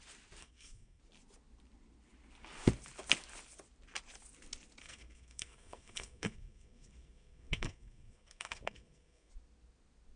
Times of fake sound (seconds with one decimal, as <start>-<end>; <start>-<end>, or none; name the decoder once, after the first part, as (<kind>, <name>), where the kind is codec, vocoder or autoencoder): 0.4-1.0 (codec, SNAC); 4.8-9.3